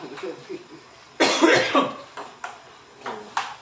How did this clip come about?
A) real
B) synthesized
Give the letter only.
A